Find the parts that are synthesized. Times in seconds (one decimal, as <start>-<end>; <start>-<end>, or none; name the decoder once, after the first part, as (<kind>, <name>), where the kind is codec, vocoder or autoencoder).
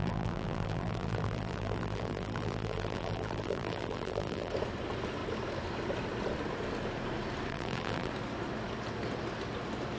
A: 0.0-4.5 (vocoder, BigVGAN v2); 7.5-8.1